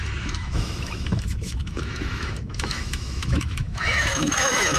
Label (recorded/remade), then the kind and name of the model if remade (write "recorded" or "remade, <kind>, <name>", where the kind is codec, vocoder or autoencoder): remade, autoencoder, DAC-VAE